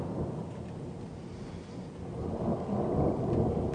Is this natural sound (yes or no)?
yes